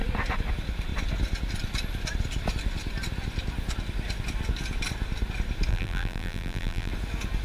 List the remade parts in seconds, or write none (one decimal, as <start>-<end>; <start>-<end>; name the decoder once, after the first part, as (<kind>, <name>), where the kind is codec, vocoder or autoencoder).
5.7-6.9 (vocoder, BigVGAN v2)